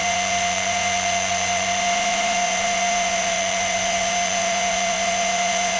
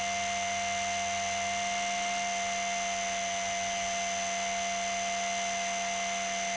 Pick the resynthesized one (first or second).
first